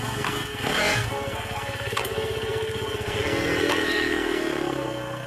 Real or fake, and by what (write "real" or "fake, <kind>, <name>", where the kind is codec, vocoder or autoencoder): fake, codec, SNAC